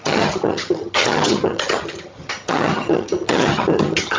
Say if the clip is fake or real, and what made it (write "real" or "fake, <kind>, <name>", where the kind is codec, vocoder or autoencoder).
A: fake, vocoder, HiFi-GAN